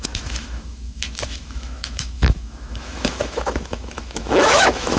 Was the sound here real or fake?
fake